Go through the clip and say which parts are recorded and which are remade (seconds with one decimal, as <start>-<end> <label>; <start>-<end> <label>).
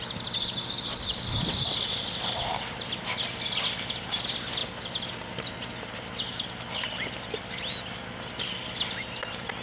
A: 0.0-9.6 recorded